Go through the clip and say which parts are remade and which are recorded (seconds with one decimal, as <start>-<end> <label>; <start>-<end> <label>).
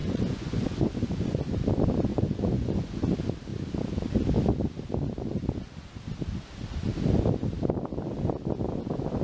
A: 0.0-1.4 remade; 1.4-2.1 recorded; 2.1-3.0 remade; 3.0-9.2 recorded